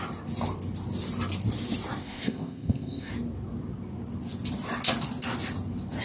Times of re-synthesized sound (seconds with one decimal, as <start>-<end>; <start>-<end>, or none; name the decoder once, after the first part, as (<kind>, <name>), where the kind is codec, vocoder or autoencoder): 2.0-3.1 (codec, ZipCodec)